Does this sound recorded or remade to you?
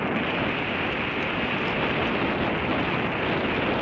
recorded